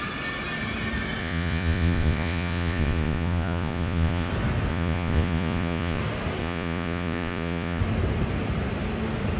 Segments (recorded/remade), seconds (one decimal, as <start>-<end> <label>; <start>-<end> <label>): 0.0-1.2 recorded; 1.2-4.3 remade; 4.3-4.7 recorded; 4.7-6.0 remade; 6.0-6.4 recorded; 6.4-7.8 remade; 7.8-9.4 recorded